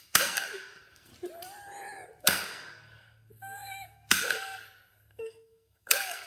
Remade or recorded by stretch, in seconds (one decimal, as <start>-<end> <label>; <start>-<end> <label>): 0.0-1.1 remade; 1.1-2.2 recorded; 2.2-6.3 remade